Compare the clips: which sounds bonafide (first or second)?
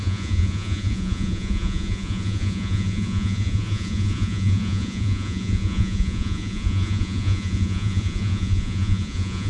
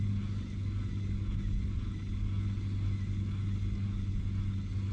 second